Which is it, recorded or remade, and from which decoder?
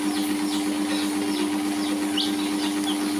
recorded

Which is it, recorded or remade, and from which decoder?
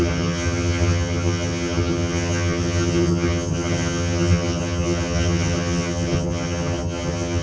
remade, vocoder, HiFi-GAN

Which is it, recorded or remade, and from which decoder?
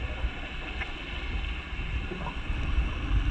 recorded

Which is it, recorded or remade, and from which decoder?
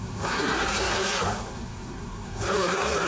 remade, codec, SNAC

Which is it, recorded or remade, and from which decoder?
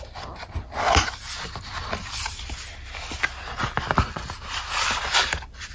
recorded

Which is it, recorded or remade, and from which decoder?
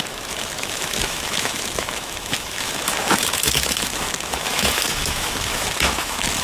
remade, autoencoder, DAC-VAE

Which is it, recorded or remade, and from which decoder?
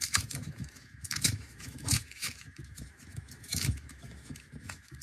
remade, autoencoder, DAC-VAE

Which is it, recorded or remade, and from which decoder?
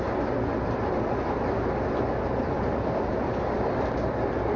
remade, vocoder, BigVGAN v2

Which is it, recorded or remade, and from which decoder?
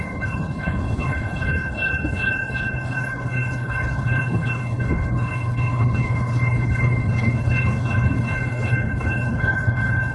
remade, codec, HILCodec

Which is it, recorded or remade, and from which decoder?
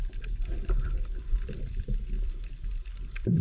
remade, vocoder, BigVGAN v2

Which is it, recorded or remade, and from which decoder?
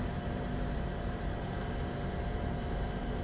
remade, vocoder, BigVGAN v2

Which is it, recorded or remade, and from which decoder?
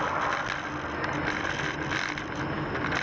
recorded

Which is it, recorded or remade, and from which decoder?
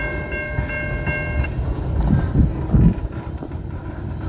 recorded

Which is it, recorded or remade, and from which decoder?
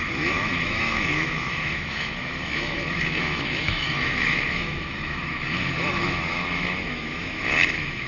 remade, autoencoder, DAC-VAE